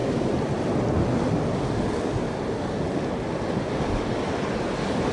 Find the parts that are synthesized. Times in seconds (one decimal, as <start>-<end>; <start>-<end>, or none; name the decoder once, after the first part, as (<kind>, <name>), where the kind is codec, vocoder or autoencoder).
none